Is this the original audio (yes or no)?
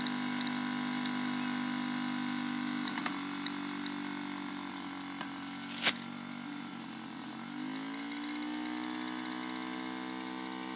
yes